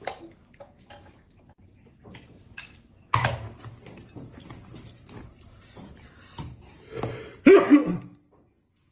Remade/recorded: recorded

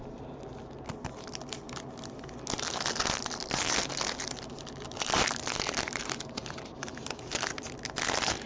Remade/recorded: recorded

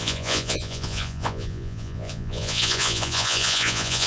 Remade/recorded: remade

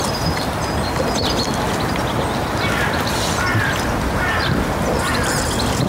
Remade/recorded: recorded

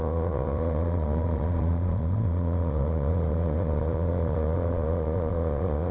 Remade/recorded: remade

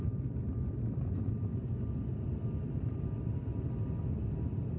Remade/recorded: recorded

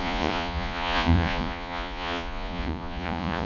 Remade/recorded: remade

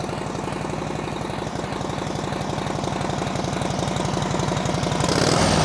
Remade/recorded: recorded